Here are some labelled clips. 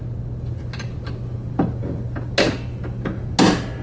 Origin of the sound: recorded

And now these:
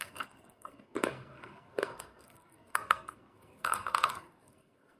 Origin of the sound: remade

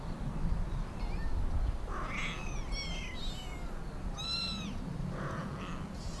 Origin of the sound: recorded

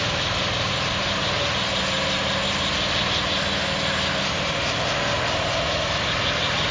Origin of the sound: recorded